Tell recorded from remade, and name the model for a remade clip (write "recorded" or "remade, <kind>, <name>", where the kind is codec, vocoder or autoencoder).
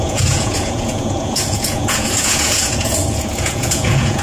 remade, vocoder, Vocos